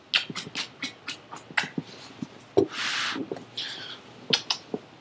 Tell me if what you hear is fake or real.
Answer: real